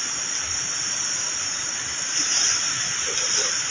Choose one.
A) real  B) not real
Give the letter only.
A